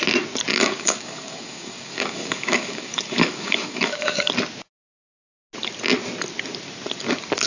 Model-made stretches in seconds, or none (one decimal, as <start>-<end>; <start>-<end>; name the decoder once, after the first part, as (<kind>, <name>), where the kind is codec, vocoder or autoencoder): 0.5-4.3 (codec, DAC)

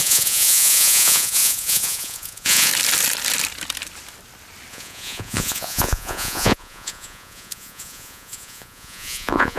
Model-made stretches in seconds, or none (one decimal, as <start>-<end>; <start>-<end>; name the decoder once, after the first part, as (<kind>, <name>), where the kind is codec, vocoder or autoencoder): 0.0-2.7 (vocoder, Vocos); 4.7-9.6

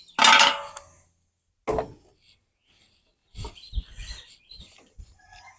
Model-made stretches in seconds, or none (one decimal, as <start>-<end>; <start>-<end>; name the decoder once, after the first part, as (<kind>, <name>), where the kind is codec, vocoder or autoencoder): none

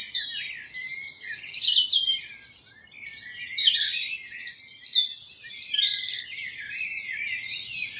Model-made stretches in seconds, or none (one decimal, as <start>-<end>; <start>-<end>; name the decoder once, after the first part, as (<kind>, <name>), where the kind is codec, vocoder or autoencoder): none

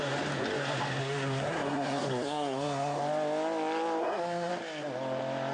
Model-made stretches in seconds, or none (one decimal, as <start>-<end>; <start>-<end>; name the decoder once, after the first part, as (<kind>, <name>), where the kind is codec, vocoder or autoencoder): 1.0-3.0 (codec, SNAC); 4.0-4.5

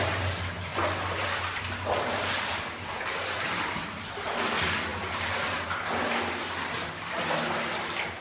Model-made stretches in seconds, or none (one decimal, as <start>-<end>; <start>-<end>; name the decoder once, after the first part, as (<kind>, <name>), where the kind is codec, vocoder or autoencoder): none

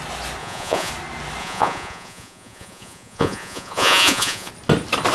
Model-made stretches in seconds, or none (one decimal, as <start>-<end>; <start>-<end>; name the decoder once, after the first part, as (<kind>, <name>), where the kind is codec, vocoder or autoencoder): 0.4-0.9 (vocoder, Vocos); 1.4-4.5

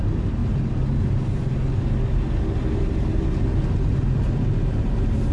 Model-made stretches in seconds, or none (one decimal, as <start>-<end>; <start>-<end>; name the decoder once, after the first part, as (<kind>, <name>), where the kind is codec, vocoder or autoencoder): none